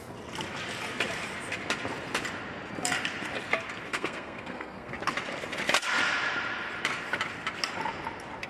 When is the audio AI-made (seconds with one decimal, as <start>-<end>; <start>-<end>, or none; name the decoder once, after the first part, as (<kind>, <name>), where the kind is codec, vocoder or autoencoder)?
3.9-4.9 (codec, SNAC)